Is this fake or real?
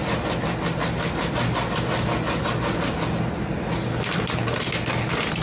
real